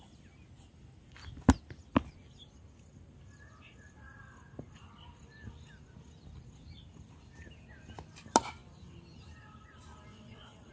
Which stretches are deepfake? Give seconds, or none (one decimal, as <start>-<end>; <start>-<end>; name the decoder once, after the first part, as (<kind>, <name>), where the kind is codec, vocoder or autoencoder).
10.1-10.7 (vocoder, WaveNeXt)